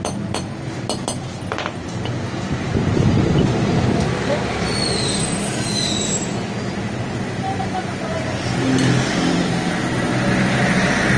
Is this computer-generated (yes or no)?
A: no